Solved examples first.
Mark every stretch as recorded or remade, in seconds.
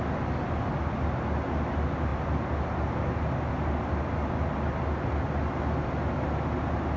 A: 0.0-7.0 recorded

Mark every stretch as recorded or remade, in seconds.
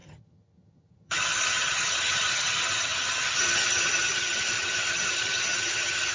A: 0.0-6.1 remade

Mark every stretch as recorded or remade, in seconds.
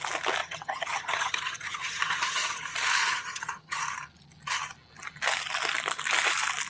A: 0.0-0.4 recorded; 0.4-2.6 remade; 2.6-3.0 recorded; 3.0-3.8 remade; 3.8-6.7 recorded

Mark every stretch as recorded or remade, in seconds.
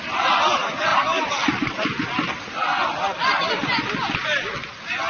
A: 0.0-5.1 recorded